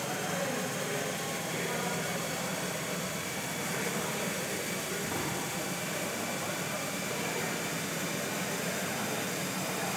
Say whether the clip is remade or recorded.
remade